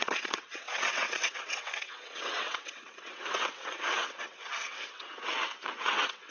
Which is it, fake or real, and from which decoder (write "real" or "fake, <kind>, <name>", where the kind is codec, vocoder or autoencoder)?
fake, vocoder, WaveNeXt